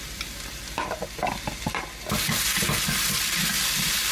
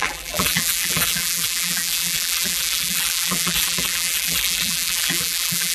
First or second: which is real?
first